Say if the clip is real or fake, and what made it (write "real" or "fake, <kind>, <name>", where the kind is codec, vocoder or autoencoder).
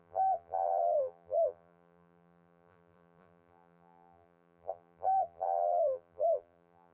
fake, vocoder, BigVGAN v2